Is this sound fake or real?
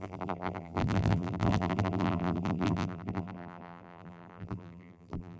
fake